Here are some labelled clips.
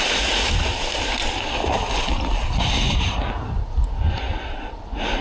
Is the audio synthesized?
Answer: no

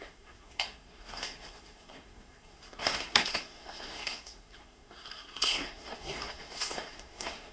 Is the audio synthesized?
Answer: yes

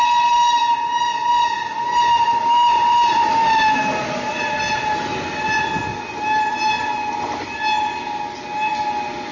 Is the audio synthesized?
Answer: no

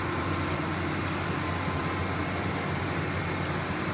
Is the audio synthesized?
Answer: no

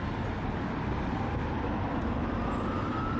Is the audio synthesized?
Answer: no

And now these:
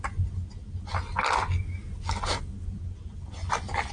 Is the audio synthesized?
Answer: no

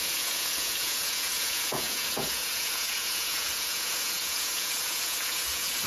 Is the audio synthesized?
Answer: yes